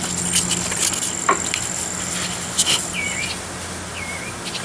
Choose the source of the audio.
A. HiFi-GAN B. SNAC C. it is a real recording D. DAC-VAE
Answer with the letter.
C